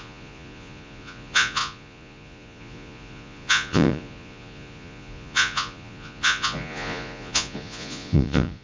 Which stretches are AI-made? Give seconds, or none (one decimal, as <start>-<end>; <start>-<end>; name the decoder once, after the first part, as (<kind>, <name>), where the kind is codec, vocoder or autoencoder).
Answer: 0.0-8.6 (vocoder, Vocos)